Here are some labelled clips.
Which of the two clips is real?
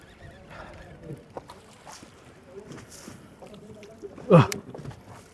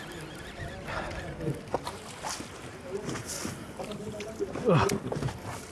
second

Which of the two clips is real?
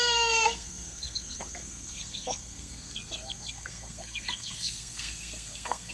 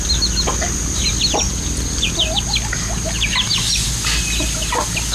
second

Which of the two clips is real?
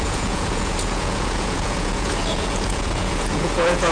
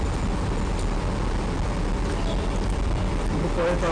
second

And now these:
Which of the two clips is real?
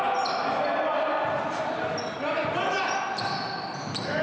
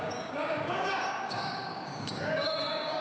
first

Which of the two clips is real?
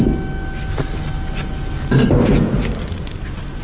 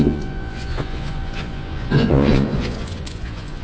first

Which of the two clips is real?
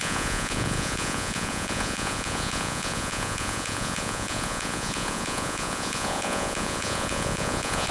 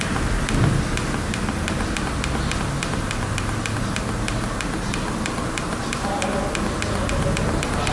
second